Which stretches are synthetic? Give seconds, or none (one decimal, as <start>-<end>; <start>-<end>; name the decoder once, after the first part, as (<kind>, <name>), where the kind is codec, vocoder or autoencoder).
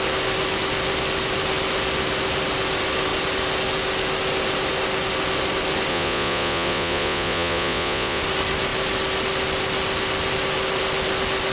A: 5.9-8.2 (vocoder, Vocos)